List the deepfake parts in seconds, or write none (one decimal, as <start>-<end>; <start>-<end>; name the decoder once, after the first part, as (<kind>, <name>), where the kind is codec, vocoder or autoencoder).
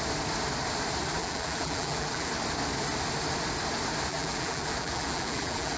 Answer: 1.2-2.3 (vocoder, BigVGAN v2); 4.1-5.8